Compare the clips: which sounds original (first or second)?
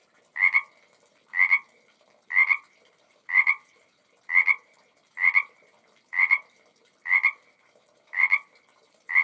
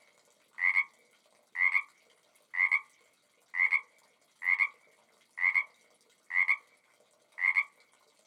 second